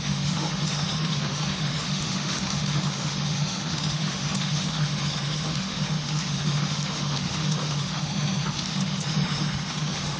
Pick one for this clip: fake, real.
fake